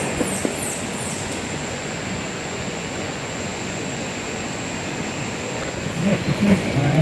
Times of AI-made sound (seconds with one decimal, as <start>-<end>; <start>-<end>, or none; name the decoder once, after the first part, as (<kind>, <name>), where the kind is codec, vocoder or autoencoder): 0.0-0.4 (vocoder, Vocos); 1.0-7.0